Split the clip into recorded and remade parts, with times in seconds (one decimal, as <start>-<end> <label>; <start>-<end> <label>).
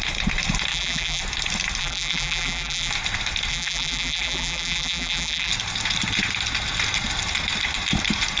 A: 0.0-0.7 recorded; 0.7-1.2 remade; 1.2-1.8 recorded; 1.8-2.9 remade; 2.9-3.5 recorded; 3.5-5.5 remade; 5.5-8.4 recorded